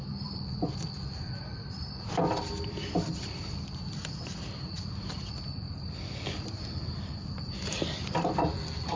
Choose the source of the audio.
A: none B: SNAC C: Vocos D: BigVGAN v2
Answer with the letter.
D